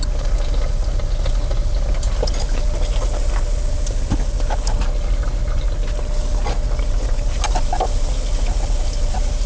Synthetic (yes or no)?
no